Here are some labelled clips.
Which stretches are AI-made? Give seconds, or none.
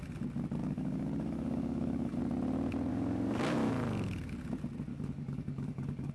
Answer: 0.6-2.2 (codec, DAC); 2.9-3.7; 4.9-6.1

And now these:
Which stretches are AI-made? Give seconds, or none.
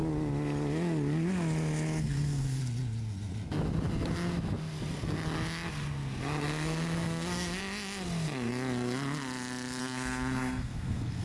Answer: 2.0-2.6 (codec, SNAC); 6.4-7.6; 9.8-11.2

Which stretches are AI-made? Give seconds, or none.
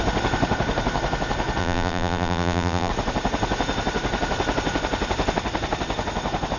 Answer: 1.6-2.9 (vocoder, BigVGAN v2)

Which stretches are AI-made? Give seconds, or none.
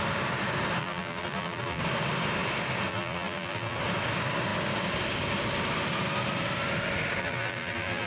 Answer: 0.8-1.8 (vocoder, BigVGAN v2); 2.9-3.8; 7.2-8.1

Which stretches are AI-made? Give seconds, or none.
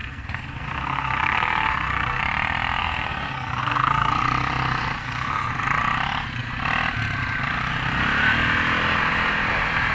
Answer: 0.0-2.2 (codec, SNAC); 2.8-4.1; 5.0-5.5